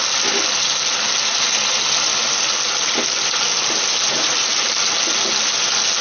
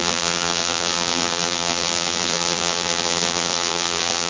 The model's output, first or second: second